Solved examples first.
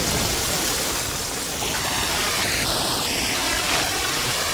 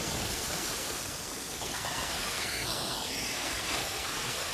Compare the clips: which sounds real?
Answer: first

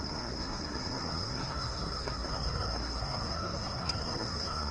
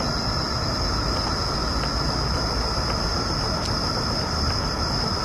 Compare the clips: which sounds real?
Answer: second